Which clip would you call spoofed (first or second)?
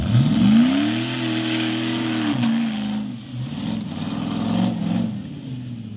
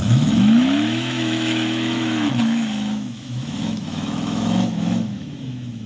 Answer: second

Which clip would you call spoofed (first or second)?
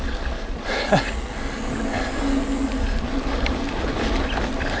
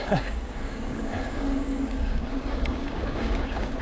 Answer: second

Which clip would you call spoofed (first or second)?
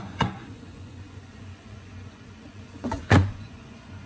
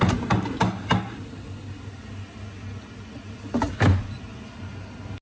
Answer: first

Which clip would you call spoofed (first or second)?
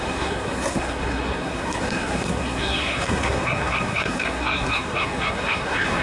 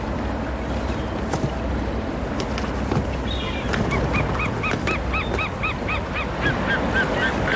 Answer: first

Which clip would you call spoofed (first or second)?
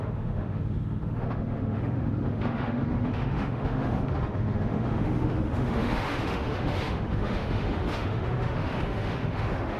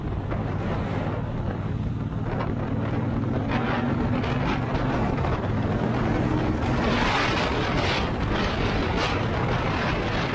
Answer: first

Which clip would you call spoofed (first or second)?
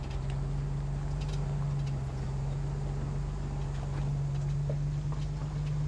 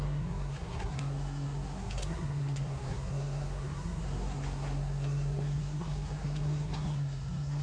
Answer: second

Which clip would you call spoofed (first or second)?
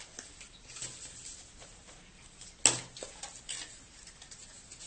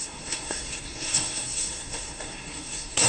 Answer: second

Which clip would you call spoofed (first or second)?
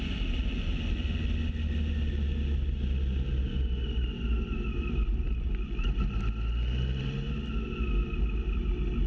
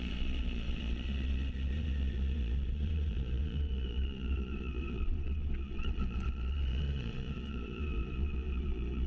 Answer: second